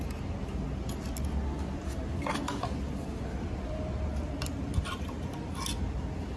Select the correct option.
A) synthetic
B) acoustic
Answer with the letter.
B